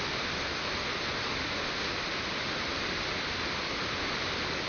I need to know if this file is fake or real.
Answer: real